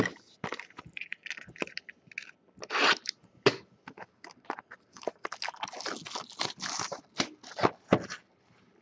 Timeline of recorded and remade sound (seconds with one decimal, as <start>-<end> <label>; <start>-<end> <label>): 0.0-8.8 recorded